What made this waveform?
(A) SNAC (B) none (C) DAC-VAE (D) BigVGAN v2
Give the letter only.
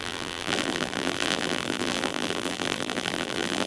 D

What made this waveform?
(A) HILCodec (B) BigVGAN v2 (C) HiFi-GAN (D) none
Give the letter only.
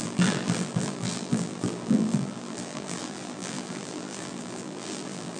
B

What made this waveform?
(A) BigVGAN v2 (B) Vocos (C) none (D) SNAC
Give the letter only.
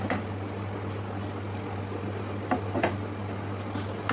C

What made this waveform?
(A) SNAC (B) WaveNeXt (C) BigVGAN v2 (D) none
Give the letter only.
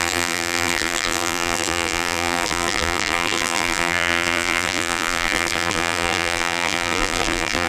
C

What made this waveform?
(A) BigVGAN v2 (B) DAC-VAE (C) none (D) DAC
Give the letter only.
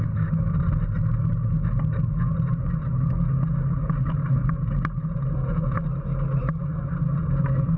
C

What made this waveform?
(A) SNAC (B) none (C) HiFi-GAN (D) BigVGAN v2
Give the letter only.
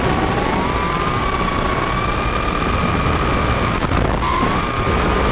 D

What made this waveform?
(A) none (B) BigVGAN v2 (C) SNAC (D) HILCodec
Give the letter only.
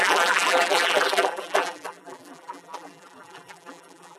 B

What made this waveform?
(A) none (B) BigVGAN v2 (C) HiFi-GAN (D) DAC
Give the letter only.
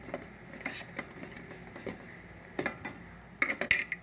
A